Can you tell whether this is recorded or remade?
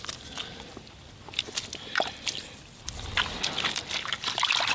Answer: recorded